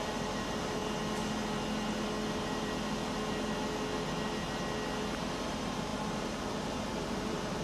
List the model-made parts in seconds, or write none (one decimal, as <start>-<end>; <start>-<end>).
0.0-0.8; 5.4-7.6